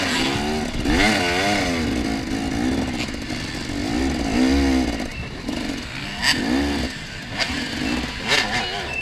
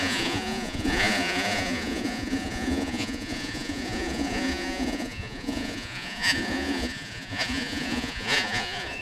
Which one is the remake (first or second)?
second